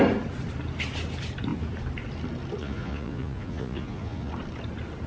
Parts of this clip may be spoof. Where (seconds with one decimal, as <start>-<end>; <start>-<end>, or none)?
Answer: 2.6-4.3